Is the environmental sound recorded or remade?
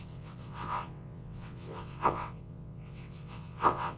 remade